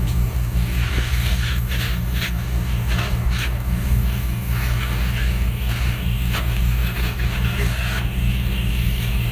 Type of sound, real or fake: fake